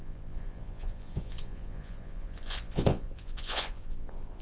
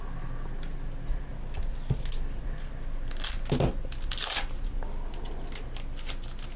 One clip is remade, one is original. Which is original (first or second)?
second